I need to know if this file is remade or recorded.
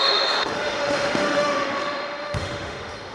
remade